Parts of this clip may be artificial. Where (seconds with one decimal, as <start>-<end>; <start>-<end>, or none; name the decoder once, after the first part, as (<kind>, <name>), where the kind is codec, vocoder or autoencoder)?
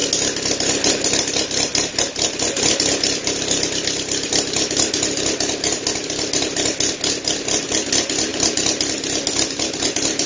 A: none